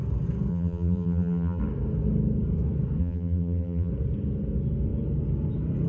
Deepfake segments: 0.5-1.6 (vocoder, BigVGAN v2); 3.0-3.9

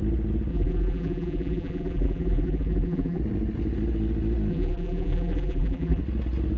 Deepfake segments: 0.5-3.2 (vocoder, BigVGAN v2); 4.5-6.0

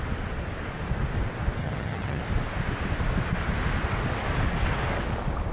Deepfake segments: 1.6-2.2 (vocoder, HiFi-GAN)

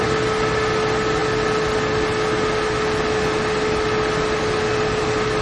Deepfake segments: none

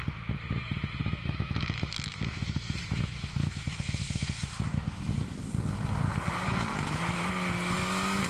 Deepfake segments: 1.0-5.4 (autoencoder, DAC-VAE); 6.7-7.3